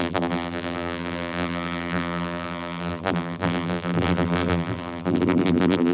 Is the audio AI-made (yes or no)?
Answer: yes